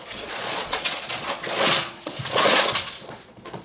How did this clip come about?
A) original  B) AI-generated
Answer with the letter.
B